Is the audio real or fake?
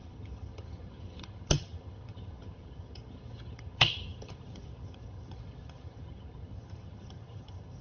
fake